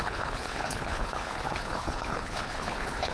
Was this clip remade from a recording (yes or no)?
yes